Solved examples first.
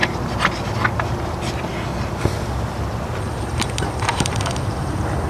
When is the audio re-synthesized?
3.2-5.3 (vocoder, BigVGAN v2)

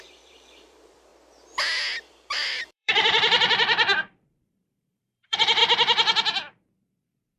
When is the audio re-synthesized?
0.0-1.1 (vocoder, BigVGAN v2); 2.1-5.6

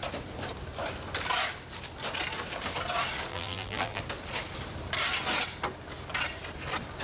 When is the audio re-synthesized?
3.3-4.0 (vocoder, BigVGAN v2)

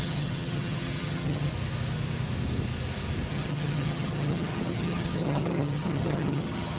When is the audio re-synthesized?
0.0-1.5 (vocoder, HiFi-GAN); 3.3-6.8